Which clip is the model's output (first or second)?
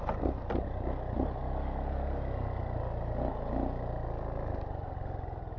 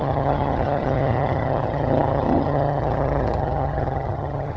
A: second